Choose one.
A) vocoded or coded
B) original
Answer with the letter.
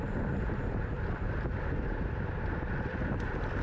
B